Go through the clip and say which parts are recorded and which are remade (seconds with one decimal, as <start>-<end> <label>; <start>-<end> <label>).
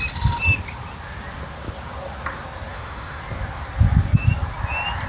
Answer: 0.0-2.7 recorded; 2.7-3.2 remade; 3.2-5.1 recorded